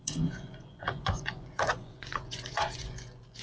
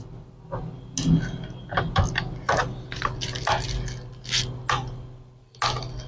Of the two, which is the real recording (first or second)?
second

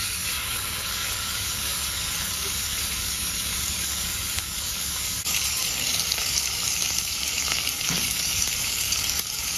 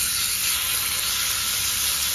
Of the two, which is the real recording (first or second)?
second